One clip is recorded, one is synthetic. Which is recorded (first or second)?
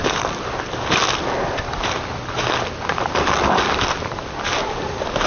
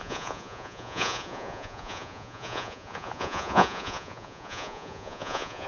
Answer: first